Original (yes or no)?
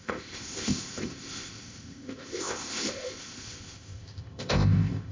no